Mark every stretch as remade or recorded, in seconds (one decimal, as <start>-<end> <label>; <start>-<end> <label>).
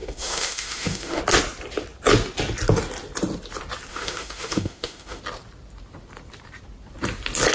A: 0.0-1.2 remade; 1.2-3.9 recorded; 3.9-5.2 remade; 5.2-7.5 recorded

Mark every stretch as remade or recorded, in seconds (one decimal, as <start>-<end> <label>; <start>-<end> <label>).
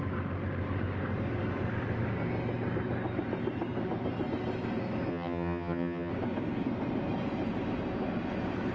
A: 0.0-5.1 recorded; 5.1-6.1 remade; 6.1-8.7 recorded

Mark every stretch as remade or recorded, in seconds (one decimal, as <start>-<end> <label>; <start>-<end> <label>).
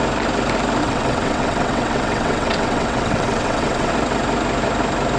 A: 0.0-0.8 recorded; 0.8-3.9 remade; 3.9-5.2 recorded